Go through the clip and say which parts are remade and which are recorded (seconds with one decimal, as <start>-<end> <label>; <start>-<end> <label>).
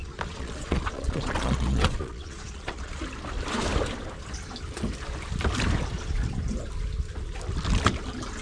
0.0-3.0 remade; 3.0-8.4 recorded